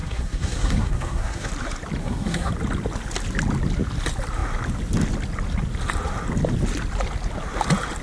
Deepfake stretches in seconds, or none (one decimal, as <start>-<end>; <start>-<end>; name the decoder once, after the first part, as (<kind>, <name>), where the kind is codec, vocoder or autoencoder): 0.0-1.5 (codec, SNAC); 2.0-2.5